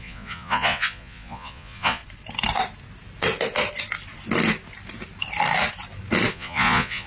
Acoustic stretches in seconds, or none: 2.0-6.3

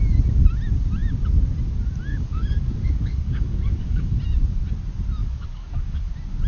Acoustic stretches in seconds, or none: 0.0-2.1; 4.2-5.2; 6.1-6.5

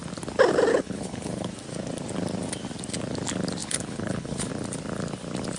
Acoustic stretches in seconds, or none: 0.0-0.7; 1.5-3.6; 4.5-5.6

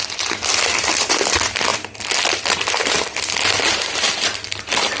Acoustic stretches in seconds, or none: none

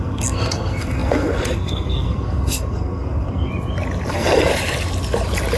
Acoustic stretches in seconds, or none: 3.5-4.1; 4.5-5.6